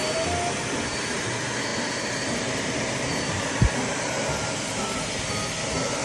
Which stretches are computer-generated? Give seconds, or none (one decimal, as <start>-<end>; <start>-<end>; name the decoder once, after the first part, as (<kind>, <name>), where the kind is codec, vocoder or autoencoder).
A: 1.7-5.3 (vocoder, BigVGAN v2)